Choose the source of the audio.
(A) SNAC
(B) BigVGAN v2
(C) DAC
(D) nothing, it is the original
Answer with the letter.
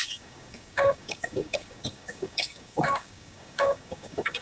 C